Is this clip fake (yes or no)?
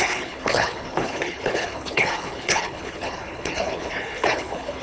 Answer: yes